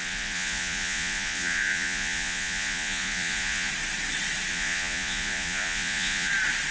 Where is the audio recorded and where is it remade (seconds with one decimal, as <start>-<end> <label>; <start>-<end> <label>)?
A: 0.0-3.7 remade; 3.7-4.5 recorded; 4.5-6.3 remade; 6.3-6.7 recorded